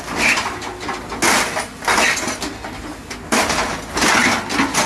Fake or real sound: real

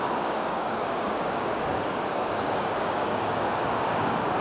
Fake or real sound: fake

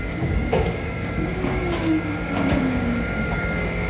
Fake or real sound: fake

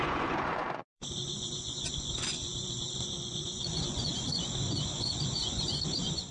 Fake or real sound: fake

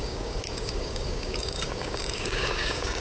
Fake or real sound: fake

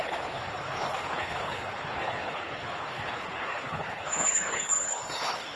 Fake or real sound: fake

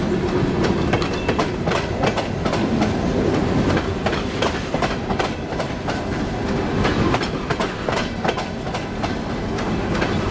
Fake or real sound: real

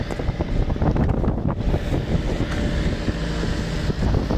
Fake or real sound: real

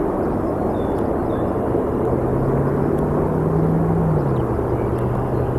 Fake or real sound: real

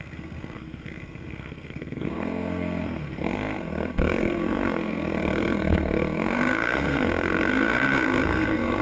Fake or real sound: fake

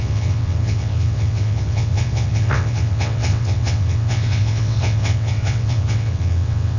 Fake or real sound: fake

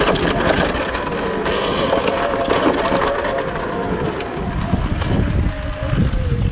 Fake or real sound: real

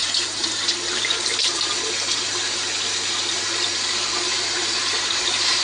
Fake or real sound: fake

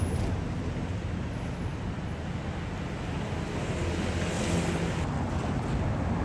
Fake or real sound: real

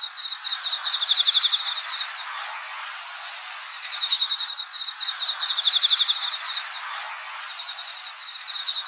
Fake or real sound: real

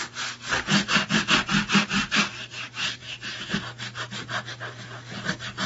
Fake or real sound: fake